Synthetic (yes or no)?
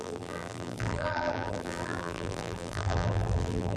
yes